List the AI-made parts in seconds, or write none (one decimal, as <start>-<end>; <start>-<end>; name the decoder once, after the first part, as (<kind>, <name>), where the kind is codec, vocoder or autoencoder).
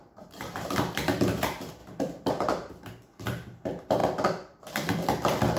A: 0.0-1.8 (vocoder, BigVGAN v2); 2.3-4.0